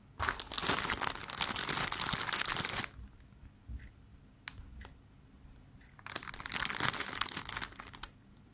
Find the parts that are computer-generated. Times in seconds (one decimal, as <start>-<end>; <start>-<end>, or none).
none